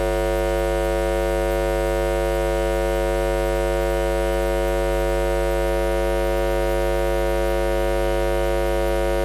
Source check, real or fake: real